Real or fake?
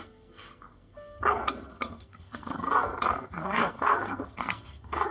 fake